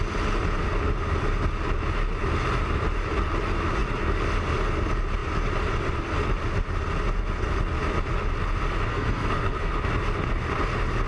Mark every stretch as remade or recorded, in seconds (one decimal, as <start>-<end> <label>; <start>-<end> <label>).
0.0-8.9 recorded; 8.9-9.7 remade; 9.7-11.1 recorded